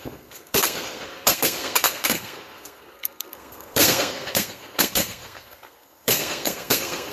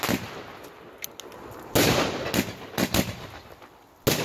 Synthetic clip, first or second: first